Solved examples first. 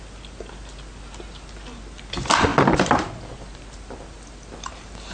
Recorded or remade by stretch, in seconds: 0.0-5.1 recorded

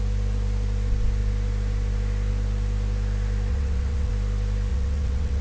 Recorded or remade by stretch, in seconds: 0.0-3.5 recorded; 3.5-4.1 remade; 4.1-4.7 recorded; 4.7-5.4 remade

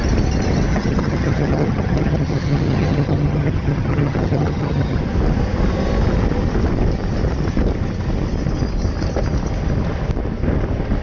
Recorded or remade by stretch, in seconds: 0.0-0.7 recorded; 0.7-5.0 remade; 5.0-11.0 recorded

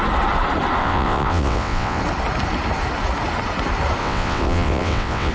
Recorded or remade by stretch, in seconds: 0.0-0.8 recorded; 0.8-2.0 remade; 2.0-4.0 recorded; 4.0-5.3 remade

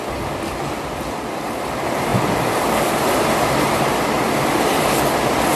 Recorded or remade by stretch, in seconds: 0.0-5.6 recorded

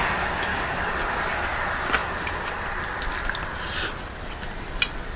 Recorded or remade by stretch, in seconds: 0.0-0.5 recorded; 0.5-1.2 remade; 1.2-5.2 recorded

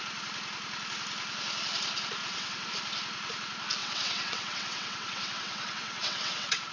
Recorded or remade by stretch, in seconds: 0.0-2.2 recorded; 2.2-2.7 remade; 2.7-3.8 recorded; 3.8-6.7 remade